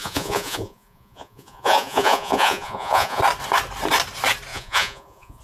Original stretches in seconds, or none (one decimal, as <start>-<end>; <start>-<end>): 3.2-4.5